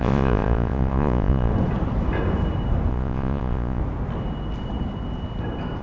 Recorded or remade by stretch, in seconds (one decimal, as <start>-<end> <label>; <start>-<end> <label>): 0.0-1.5 remade; 1.5-2.9 recorded; 2.9-3.8 remade; 3.8-5.8 recorded

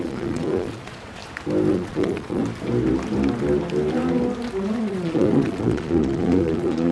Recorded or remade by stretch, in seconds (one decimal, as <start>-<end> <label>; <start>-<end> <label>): 0.0-1.2 remade; 1.2-1.7 recorded; 1.7-2.4 remade; 2.4-4.8 recorded; 4.8-6.9 remade

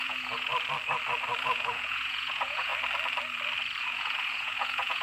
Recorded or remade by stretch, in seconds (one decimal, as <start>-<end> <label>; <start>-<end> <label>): 0.0-0.5 remade; 0.5-1.4 recorded; 1.4-2.7 remade; 2.7-3.8 recorded; 3.8-5.0 remade

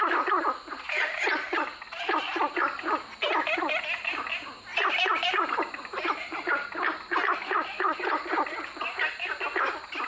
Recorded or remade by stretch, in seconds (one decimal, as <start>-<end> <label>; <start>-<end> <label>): 0.0-10.1 recorded

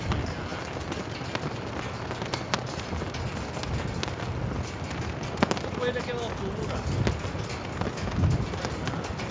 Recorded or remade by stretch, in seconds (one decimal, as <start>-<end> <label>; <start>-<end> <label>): 0.0-9.3 recorded